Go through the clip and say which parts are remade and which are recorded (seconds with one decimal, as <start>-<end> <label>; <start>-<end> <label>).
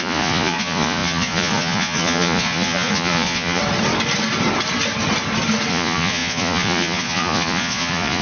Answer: 0.0-3.6 remade; 3.6-5.7 recorded; 5.7-8.2 remade